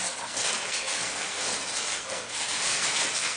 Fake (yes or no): yes